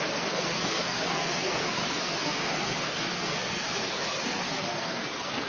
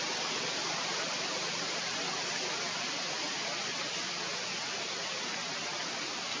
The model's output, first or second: first